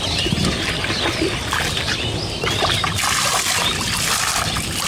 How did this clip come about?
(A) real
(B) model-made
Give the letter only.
A